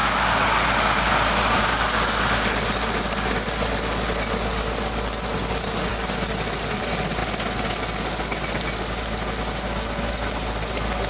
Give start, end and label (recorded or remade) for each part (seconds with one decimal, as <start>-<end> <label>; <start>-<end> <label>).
0.0-11.1 recorded